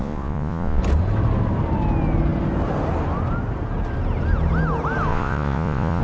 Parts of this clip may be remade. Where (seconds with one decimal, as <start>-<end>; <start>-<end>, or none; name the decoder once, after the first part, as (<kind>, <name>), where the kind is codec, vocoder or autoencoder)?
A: 0.0-0.8 (vocoder, Vocos); 5.1-6.0